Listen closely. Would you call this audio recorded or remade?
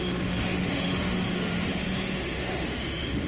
remade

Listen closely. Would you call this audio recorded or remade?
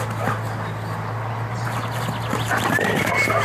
recorded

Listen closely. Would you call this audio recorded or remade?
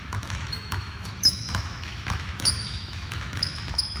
remade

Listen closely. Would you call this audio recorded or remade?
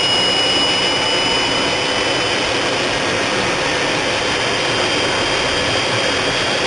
recorded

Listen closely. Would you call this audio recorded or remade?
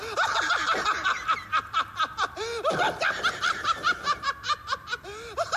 recorded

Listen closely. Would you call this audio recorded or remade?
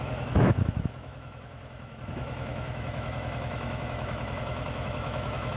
remade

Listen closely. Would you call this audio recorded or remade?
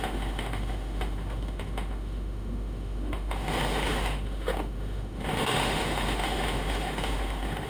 remade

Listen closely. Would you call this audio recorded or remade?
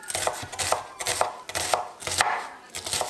recorded